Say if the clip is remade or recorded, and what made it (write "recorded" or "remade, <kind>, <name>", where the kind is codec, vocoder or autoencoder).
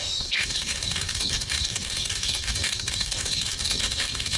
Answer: remade, codec, DAC